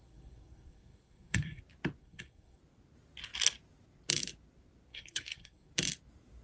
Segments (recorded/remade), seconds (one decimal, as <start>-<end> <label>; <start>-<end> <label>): 0.0-1.6 remade; 1.6-2.0 recorded; 2.0-2.6 remade; 2.6-4.9 recorded; 4.9-5.7 remade; 5.7-6.4 recorded